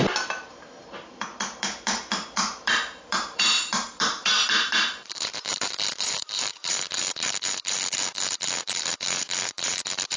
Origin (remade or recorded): remade